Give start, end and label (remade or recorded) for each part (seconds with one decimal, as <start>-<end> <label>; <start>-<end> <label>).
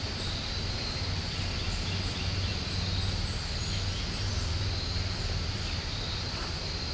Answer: 0.0-6.9 recorded